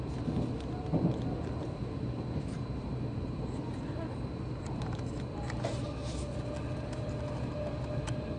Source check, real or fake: real